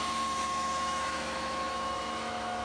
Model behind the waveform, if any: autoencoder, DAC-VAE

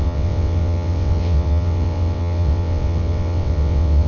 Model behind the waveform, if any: vocoder, WaveNeXt